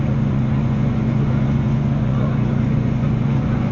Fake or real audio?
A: fake